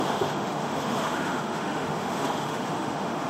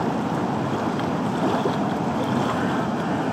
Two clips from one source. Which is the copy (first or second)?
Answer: first